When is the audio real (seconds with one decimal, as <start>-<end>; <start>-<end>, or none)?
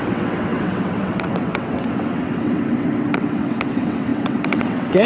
none